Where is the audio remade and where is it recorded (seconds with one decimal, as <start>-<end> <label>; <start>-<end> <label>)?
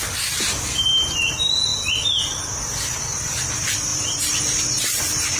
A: 0.0-3.9 recorded; 3.9-4.6 remade; 4.6-5.4 recorded